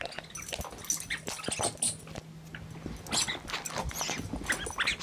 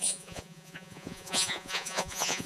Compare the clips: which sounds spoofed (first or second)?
second